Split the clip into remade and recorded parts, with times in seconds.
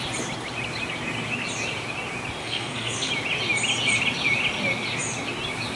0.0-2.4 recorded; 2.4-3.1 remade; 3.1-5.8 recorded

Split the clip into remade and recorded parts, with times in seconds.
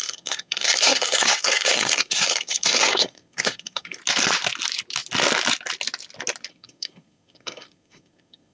0.0-4.0 remade; 4.0-6.5 recorded; 6.5-8.5 remade